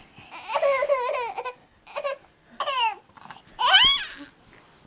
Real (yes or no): yes